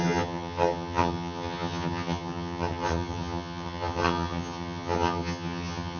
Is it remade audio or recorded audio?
remade